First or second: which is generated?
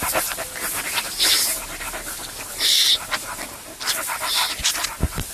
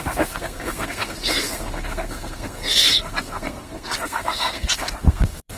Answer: second